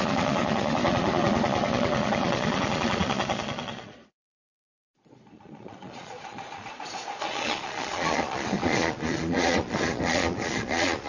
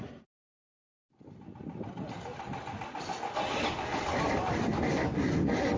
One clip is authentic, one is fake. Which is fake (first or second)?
first